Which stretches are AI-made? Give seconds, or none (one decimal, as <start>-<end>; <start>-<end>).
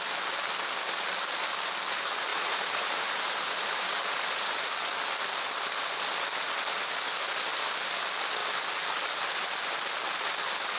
2.3-4.6